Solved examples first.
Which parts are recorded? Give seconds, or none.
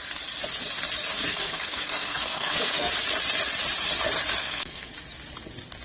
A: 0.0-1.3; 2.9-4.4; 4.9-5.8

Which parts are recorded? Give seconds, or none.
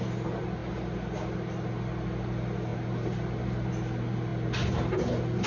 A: 0.0-5.5